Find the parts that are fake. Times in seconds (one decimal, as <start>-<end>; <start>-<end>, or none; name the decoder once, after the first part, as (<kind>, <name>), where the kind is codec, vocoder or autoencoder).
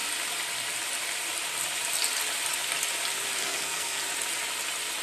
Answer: 3.4-4.0 (codec, SNAC)